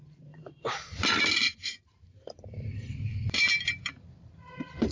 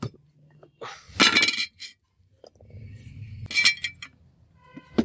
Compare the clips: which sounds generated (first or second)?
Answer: first